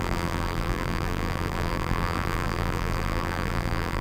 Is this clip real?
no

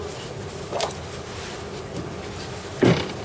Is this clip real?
yes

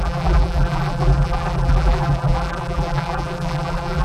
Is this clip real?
no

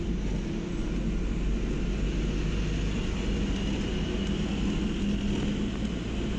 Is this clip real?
yes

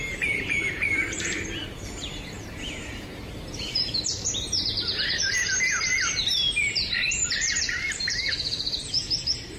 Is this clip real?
no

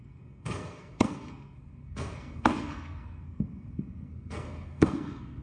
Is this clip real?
no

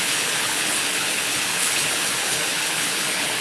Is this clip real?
no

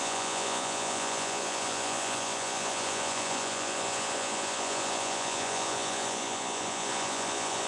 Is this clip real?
no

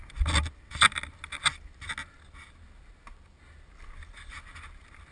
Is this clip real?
yes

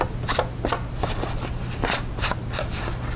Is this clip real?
yes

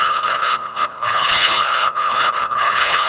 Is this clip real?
no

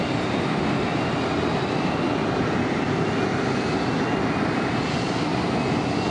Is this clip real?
yes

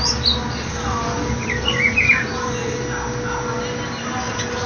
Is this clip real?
yes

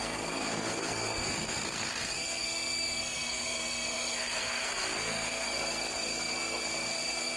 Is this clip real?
no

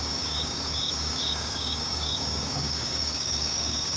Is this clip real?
no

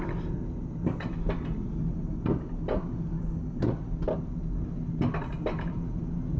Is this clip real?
yes